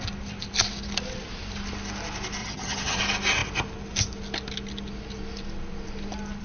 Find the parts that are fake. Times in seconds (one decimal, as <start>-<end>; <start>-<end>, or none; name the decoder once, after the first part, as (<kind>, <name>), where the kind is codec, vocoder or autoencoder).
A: 2.4-3.0 (vocoder, HiFi-GAN)